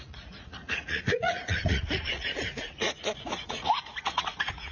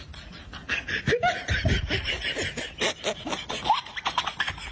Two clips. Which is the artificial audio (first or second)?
first